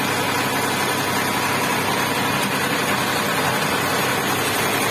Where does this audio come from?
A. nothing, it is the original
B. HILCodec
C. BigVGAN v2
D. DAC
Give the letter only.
A